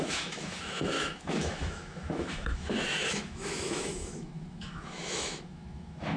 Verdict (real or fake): fake